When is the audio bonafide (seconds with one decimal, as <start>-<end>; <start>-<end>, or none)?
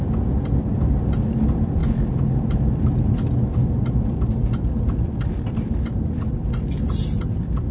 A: 0.0-7.7